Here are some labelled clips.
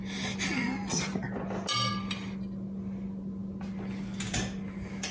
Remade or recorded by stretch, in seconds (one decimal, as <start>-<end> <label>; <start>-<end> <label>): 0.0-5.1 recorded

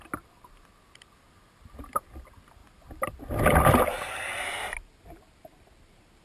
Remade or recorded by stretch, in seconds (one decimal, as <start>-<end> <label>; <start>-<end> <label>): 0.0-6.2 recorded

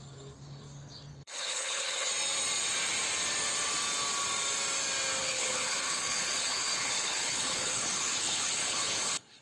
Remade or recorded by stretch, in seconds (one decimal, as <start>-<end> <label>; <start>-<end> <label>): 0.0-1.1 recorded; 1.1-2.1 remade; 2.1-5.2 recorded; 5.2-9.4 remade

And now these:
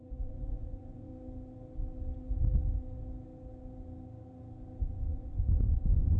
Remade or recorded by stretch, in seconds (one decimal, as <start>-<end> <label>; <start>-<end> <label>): 0.0-1.1 remade; 1.1-4.8 recorded; 4.8-6.2 remade

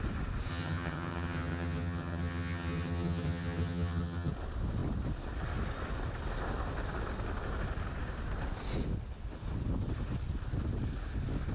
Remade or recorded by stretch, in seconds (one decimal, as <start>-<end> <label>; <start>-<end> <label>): 0.0-0.5 recorded; 0.5-4.3 remade; 4.3-11.5 recorded

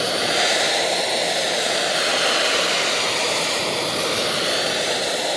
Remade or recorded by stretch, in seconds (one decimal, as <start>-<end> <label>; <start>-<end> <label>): 0.0-2.1 remade; 2.1-3.0 recorded; 3.0-5.4 remade

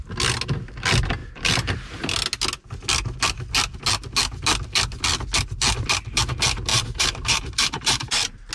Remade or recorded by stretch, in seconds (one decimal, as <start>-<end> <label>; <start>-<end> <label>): 0.0-6.7 recorded; 6.7-8.5 remade

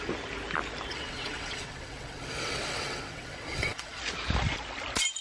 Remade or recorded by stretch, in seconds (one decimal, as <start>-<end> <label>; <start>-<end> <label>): 0.0-0.9 recorded; 0.9-4.0 remade; 4.0-5.2 recorded